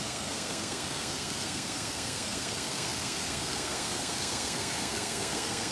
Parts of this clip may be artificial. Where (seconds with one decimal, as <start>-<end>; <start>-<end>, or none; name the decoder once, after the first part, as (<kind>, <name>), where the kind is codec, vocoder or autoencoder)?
0.0-5.7 (codec, SNAC)